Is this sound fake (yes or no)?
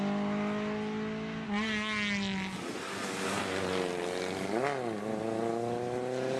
no